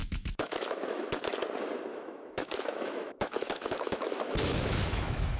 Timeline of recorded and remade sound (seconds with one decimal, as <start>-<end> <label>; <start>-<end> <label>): 0.0-1.2 remade; 1.2-1.9 recorded; 1.9-5.4 remade